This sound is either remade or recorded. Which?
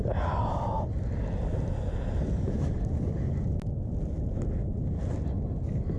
recorded